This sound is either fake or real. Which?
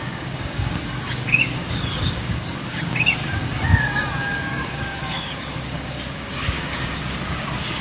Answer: fake